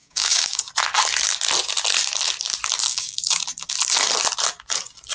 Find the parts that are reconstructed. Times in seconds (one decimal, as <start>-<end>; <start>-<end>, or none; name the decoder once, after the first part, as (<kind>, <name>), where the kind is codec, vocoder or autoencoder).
0.0-0.7 (codec, DAC); 2.9-3.4